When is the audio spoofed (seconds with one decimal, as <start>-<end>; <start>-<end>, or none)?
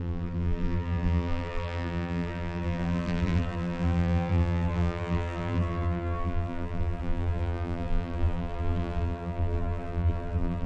0.0-10.7